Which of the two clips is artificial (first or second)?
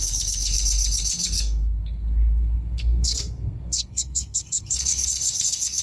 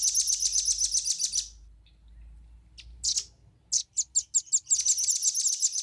first